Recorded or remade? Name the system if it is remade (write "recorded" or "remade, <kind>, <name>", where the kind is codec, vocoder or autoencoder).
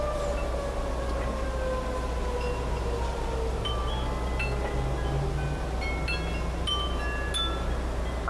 recorded